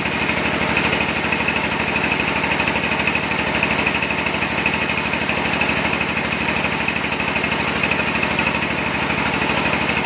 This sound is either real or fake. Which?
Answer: real